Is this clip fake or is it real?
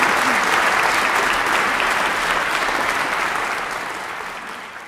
real